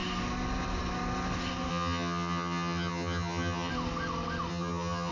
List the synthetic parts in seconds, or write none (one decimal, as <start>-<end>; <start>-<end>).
1.7-3.7; 4.5-5.1